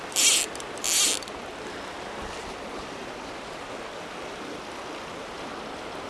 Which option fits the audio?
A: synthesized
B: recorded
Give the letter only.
B